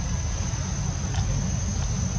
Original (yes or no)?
yes